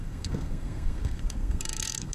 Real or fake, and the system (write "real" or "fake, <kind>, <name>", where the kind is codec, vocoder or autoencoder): fake, codec, SNAC